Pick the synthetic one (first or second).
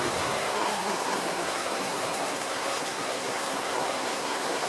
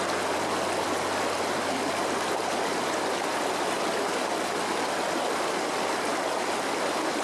first